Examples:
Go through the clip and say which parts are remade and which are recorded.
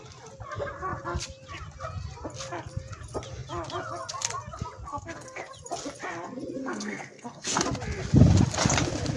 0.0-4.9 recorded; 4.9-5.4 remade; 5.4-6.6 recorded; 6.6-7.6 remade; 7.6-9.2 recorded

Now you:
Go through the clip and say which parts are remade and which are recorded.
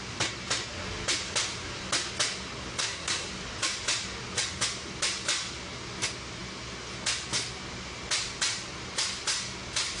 0.0-2.8 recorded; 2.8-3.3 remade; 3.3-10.0 recorded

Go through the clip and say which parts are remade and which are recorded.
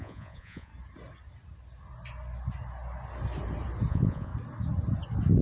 0.0-0.7 remade; 0.7-3.9 recorded; 3.9-4.3 remade; 4.3-5.4 recorded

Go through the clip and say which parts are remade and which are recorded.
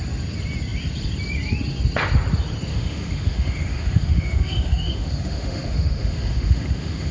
0.0-2.7 recorded; 2.7-7.1 remade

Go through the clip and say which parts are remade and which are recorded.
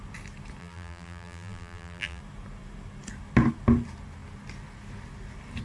0.0-0.6 recorded; 0.6-2.2 remade; 2.2-5.6 recorded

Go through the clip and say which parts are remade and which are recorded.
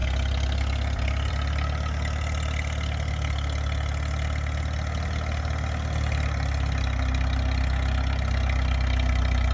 0.0-9.5 recorded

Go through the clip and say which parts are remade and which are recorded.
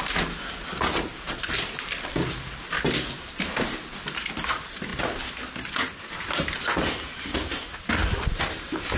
0.0-9.0 recorded